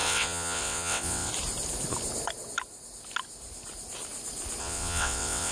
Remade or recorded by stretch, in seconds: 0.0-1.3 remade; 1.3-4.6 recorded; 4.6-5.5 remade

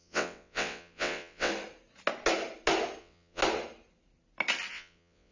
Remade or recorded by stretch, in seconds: 0.0-1.5 remade; 1.5-3.0 recorded; 3.0-3.4 remade; 3.4-4.7 recorded; 4.7-5.3 remade

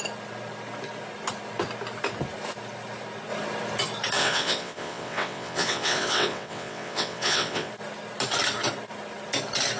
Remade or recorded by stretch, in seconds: 0.0-4.2 recorded; 4.2-7.7 remade; 7.7-9.8 recorded

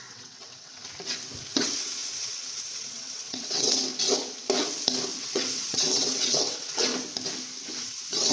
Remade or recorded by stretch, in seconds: 0.0-0.8 remade; 0.8-1.6 recorded; 1.6-3.9 remade; 3.9-5.2 recorded; 5.2-6.9 remade; 6.9-7.8 recorded; 7.8-8.3 remade